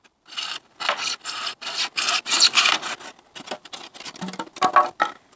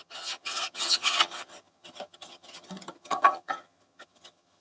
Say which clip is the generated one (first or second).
second